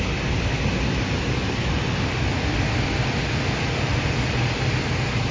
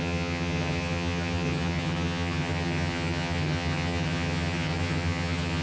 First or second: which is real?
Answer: first